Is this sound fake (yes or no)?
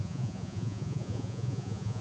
yes